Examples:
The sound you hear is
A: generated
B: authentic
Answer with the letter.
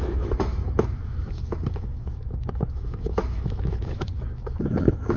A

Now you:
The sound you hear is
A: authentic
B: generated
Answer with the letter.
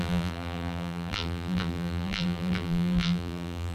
B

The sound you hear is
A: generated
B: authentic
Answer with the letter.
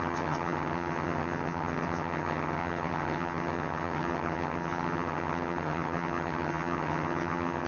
A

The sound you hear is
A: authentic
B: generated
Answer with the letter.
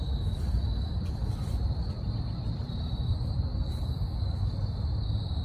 A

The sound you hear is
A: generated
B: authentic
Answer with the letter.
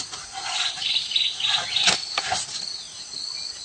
B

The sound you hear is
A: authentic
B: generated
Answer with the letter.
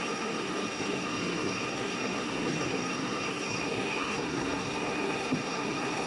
B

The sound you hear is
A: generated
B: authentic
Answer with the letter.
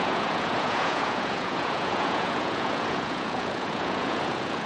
A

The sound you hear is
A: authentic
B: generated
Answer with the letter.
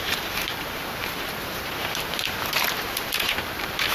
B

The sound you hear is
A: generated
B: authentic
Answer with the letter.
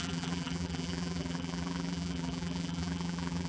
A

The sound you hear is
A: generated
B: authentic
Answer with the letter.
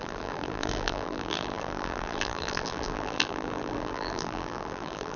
A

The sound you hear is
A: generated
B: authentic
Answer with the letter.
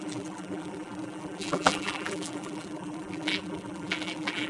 A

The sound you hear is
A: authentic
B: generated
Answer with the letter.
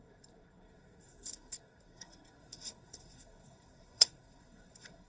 B